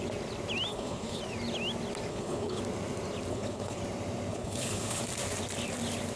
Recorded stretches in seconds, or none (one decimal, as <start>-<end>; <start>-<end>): 0.0-0.7; 1.2-2.1; 2.6-3.3; 3.8-4.3; 5.0-6.2